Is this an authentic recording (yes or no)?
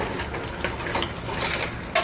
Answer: yes